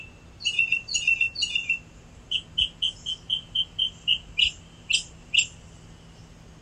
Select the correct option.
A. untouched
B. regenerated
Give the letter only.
A